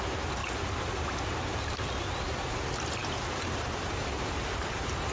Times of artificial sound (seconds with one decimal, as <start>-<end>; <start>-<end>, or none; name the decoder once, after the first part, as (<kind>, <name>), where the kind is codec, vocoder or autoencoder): 0.4-0.9 (vocoder, BigVGAN v2); 3.0-5.1